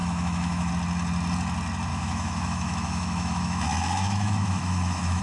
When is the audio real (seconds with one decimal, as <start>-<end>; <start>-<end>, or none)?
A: 0.7-1.9